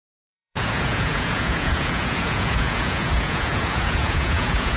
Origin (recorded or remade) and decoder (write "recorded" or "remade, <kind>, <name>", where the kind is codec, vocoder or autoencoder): remade, vocoder, Vocos